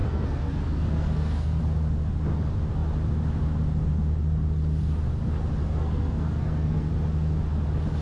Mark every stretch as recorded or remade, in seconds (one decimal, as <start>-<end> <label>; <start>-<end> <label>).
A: 0.0-1.6 remade; 1.6-5.6 recorded; 5.6-6.9 remade; 6.9-8.0 recorded